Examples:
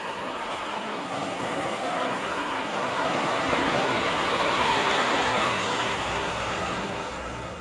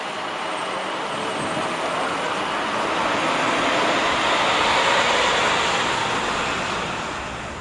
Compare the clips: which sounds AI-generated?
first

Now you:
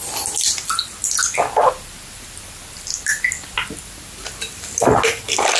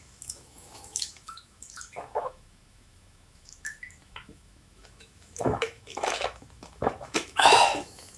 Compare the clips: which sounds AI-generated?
second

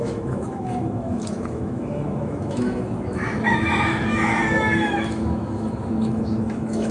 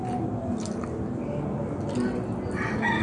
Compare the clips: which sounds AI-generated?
first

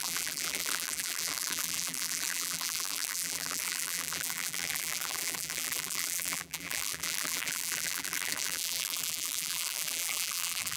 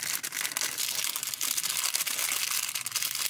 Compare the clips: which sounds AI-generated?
first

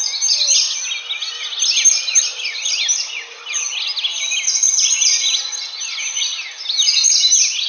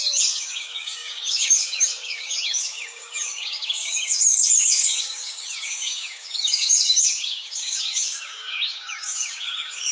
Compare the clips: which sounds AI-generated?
second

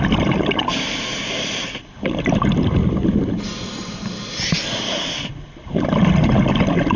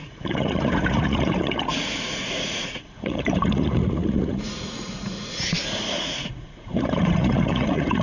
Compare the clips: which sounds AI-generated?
second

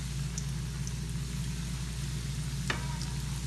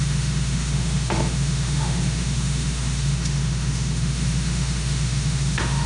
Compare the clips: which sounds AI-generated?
second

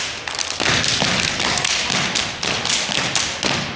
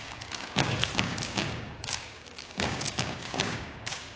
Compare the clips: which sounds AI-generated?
second